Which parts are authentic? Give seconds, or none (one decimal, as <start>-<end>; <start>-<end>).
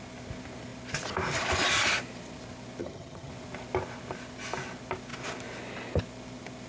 0.0-2.8; 3.3-6.7